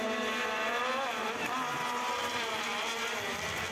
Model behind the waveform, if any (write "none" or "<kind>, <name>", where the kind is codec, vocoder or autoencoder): none